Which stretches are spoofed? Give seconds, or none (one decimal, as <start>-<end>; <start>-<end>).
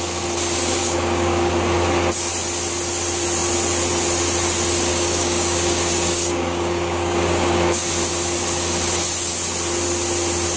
0.8-1.5; 4.9-7.9